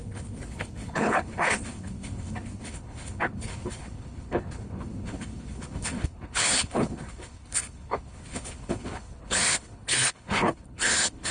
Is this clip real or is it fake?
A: fake